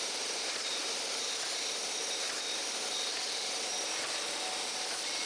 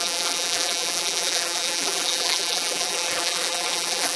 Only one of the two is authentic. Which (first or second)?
first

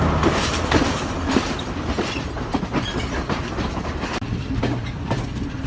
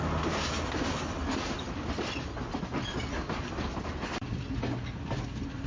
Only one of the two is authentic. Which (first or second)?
second